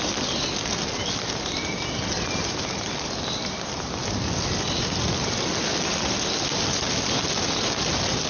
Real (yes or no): yes